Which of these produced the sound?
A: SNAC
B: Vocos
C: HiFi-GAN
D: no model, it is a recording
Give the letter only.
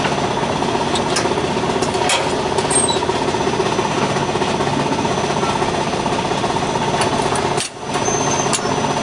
D